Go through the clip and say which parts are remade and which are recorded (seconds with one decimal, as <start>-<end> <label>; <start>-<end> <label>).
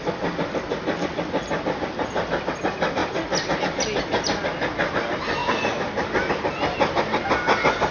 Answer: 0.0-7.9 recorded